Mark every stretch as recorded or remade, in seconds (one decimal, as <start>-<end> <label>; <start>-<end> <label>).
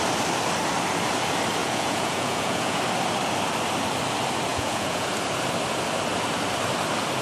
0.0-1.6 recorded; 1.6-2.8 remade; 2.8-4.5 recorded; 4.5-5.1 remade; 5.1-7.2 recorded